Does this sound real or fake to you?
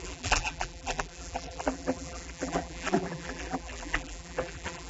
fake